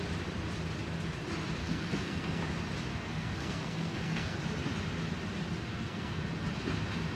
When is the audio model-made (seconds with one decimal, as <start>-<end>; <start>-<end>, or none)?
1.6-2.4; 2.9-4.4; 5.7-6.2